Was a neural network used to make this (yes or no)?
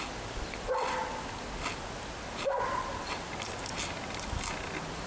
no